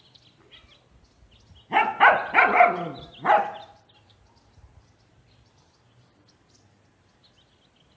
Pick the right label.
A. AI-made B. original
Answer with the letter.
B